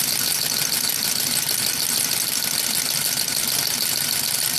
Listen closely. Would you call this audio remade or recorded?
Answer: recorded